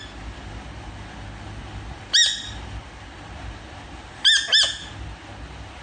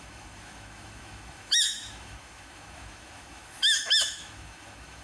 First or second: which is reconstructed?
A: second